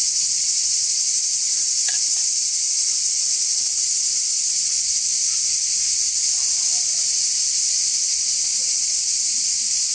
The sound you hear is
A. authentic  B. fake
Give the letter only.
A